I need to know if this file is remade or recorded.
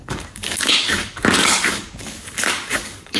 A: remade